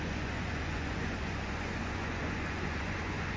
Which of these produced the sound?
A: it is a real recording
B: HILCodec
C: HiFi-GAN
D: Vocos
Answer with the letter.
D